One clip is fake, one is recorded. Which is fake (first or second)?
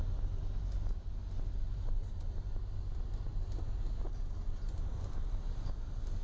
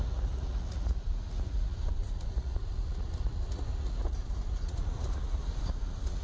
second